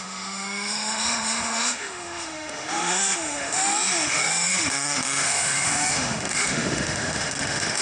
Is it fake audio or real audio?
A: fake